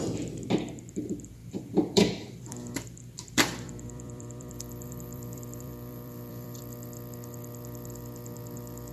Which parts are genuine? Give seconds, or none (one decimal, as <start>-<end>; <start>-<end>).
0.0-1.4; 6.6-8.9